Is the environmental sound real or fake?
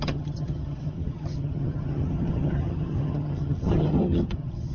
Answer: fake